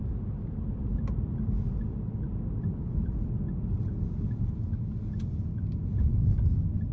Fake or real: real